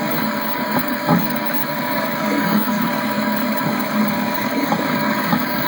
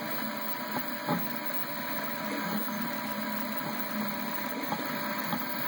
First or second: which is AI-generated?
first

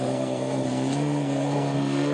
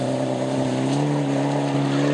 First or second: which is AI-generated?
first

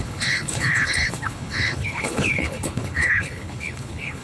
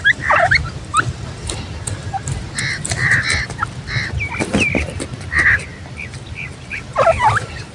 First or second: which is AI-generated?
first